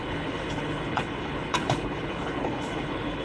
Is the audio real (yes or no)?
no